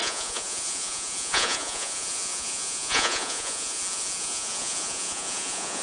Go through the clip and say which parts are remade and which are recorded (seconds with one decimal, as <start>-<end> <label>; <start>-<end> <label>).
0.0-5.8 remade